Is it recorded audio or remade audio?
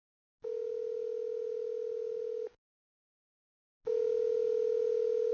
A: recorded